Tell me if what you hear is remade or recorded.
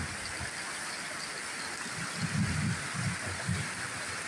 recorded